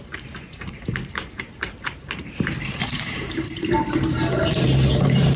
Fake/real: fake